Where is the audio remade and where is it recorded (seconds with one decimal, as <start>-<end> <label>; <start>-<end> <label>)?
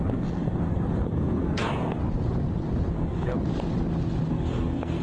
0.0-2.0 remade; 2.0-2.9 recorded; 2.9-3.3 remade; 3.3-4.3 recorded; 4.3-5.0 remade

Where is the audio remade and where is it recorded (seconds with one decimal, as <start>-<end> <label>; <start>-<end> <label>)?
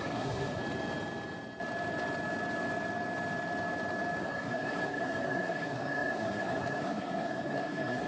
0.0-0.6 remade; 0.6-4.2 recorded; 4.2-8.1 remade